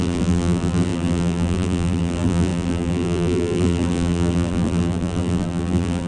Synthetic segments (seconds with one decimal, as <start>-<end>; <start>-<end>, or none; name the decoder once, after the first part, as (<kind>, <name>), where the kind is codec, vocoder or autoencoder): 0.0-6.1 (vocoder, BigVGAN v2)